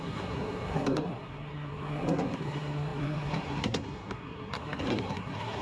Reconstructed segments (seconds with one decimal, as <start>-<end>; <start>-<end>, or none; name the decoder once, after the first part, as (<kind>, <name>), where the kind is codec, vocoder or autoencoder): 0.0-5.6 (codec, SNAC)